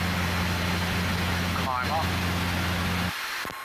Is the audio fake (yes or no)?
no